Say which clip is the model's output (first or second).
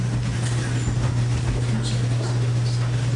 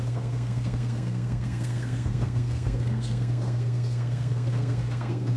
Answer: second